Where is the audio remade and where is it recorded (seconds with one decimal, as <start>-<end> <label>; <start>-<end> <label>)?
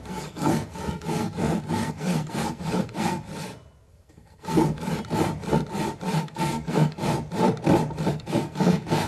0.0-3.3 remade; 3.3-3.9 recorded; 3.9-4.9 remade; 4.9-6.2 recorded; 6.2-7.1 remade; 7.1-8.1 recorded; 8.1-9.1 remade